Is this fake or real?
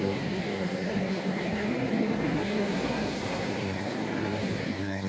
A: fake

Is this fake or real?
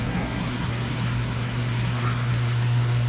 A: fake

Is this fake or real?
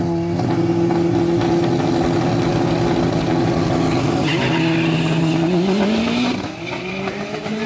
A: real